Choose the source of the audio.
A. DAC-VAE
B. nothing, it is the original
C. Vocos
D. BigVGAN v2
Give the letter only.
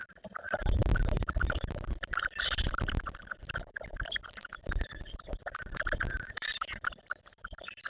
D